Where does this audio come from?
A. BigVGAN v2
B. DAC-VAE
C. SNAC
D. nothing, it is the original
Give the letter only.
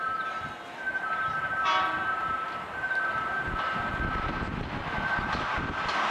D